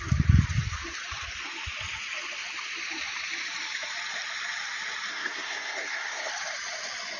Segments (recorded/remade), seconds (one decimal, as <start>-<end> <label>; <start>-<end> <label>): 0.0-5.1 recorded; 5.1-6.3 remade; 6.3-7.2 recorded